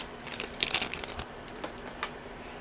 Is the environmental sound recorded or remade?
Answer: remade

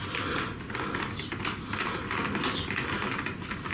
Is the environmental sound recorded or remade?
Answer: recorded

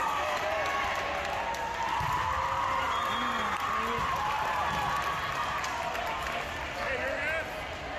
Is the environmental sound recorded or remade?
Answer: recorded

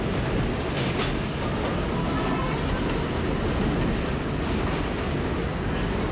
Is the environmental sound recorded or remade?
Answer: recorded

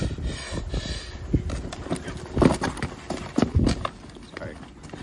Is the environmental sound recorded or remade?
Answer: recorded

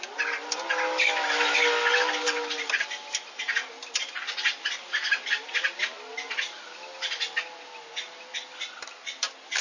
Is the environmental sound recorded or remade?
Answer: recorded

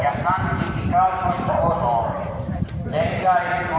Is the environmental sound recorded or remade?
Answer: remade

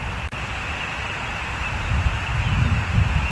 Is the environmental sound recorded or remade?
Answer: recorded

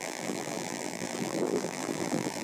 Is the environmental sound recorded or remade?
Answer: remade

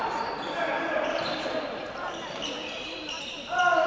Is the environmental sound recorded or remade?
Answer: recorded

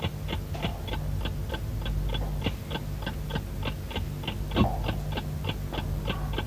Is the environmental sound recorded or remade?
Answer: recorded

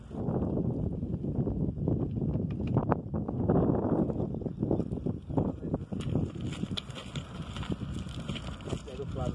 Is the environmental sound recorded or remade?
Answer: recorded